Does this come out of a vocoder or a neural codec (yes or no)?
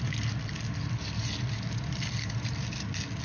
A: no